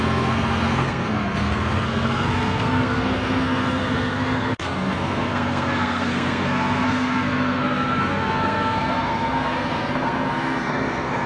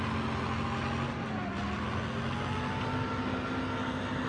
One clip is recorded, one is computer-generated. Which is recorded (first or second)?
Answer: second